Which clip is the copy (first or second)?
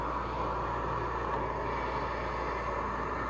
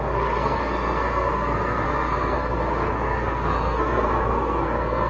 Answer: second